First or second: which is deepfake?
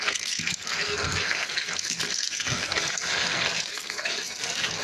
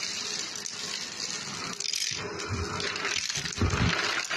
first